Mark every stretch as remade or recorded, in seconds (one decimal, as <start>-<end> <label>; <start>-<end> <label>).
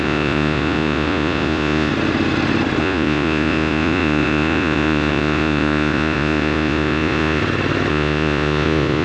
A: 0.0-1.9 remade; 1.9-2.8 recorded; 2.8-7.4 remade; 7.4-7.9 recorded; 7.9-9.0 remade